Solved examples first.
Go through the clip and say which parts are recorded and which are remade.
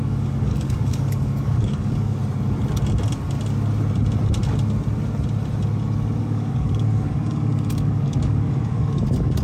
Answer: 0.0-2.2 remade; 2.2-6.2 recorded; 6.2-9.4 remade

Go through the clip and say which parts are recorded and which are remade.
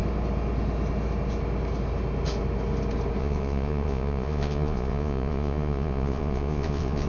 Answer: 0.0-3.2 recorded; 3.2-7.1 remade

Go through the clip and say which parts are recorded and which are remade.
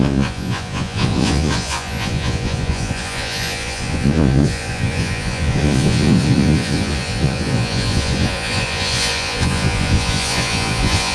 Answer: 0.0-11.1 remade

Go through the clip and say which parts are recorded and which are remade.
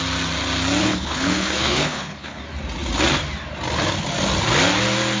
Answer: 0.0-0.8 recorded; 0.8-2.4 remade; 2.4-5.2 recorded